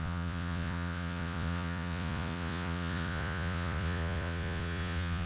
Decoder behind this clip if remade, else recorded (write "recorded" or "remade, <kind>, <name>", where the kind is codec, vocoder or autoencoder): remade, vocoder, Vocos